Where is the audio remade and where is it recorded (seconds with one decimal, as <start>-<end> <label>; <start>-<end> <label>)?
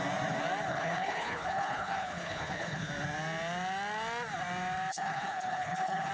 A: 0.0-0.7 recorded; 0.7-2.9 remade; 2.9-4.9 recorded; 4.9-6.1 remade